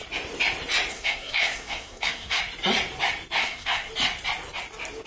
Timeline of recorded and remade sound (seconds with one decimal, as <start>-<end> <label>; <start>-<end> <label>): 0.0-0.9 recorded; 0.9-2.4 remade; 2.4-3.4 recorded; 3.4-3.9 remade; 3.9-5.1 recorded